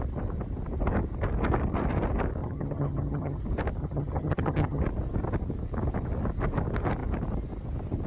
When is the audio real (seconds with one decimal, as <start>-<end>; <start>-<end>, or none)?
0.0-2.4; 3.4-3.8; 4.8-8.1